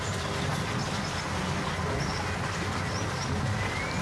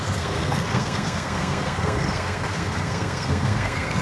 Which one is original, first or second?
first